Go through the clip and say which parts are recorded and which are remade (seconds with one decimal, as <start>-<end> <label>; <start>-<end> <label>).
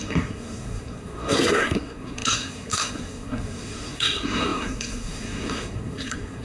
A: 0.0-6.4 remade